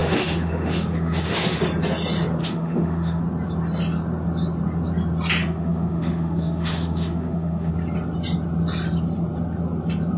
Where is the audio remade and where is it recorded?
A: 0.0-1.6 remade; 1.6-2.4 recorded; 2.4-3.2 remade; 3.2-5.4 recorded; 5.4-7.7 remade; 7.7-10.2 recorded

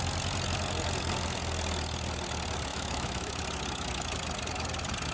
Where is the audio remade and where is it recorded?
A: 0.0-2.7 recorded; 2.7-3.3 remade; 3.3-5.1 recorded

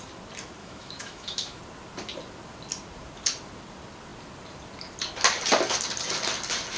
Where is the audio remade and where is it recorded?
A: 0.0-0.6 recorded; 0.6-1.6 remade; 1.6-6.8 recorded

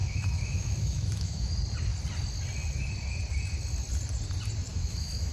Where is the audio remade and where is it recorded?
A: 0.0-1.5 remade; 1.5-4.7 recorded; 4.7-5.3 remade

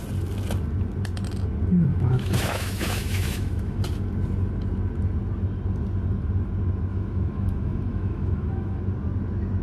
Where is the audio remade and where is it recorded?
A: 0.0-1.9 recorded; 1.9-3.8 remade; 3.8-6.9 recorded; 6.9-8.8 remade; 8.8-9.6 recorded

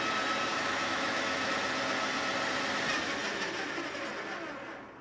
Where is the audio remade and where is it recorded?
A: 0.0-0.5 recorded; 0.5-1.5 remade; 1.5-5.0 recorded

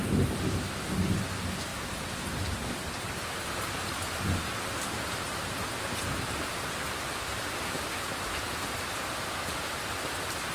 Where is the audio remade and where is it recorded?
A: 0.0-10.5 recorded

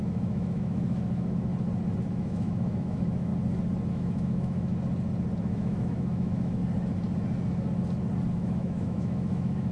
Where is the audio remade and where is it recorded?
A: 0.0-1.5 remade; 1.5-2.0 recorded; 2.0-3.3 remade; 3.3-3.9 recorded; 3.9-4.7 remade; 4.7-5.4 recorded; 5.4-6.6 remade; 6.6-8.3 recorded; 8.3-9.7 remade